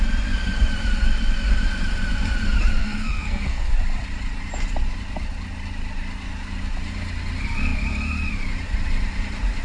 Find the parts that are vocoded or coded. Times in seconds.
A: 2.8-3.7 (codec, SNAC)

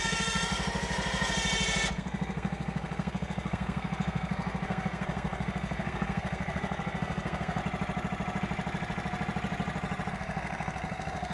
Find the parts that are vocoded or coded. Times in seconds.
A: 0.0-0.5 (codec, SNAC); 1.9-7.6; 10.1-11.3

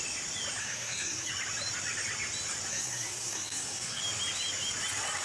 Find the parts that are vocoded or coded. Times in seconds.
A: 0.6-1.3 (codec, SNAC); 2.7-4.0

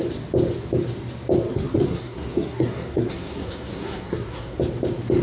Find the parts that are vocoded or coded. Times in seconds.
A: 1.5-4.6 (codec, SNAC)